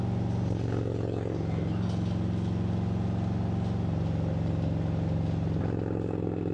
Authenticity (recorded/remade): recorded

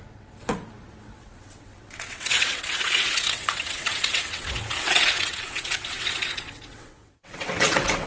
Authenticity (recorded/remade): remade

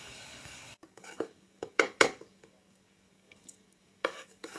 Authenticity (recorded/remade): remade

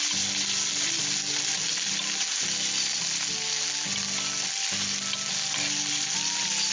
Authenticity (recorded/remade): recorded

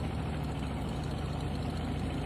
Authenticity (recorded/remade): recorded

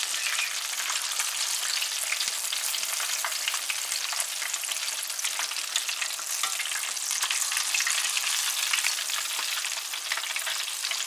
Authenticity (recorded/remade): recorded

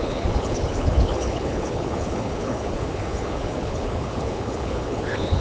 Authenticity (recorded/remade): remade